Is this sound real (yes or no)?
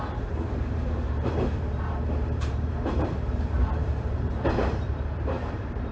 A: no